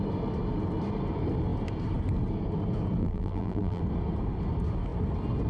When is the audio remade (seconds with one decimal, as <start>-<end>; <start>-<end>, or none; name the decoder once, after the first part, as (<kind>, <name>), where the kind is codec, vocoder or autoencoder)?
3.0-3.8 (vocoder, BigVGAN v2)